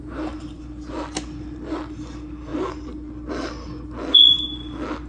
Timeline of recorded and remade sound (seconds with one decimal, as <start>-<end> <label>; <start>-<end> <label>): 0.0-5.1 recorded